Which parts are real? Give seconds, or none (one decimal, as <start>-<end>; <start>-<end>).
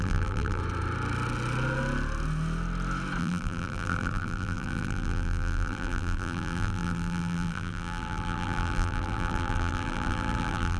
0.6-3.2